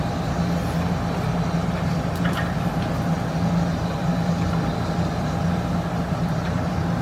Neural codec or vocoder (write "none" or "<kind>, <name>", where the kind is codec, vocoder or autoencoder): none